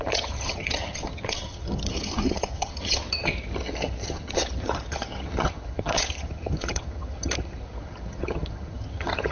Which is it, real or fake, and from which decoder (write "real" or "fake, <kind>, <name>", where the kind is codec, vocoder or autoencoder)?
fake, vocoder, HiFi-GAN